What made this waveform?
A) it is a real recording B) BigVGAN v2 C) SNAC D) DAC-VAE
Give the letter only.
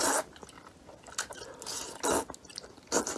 A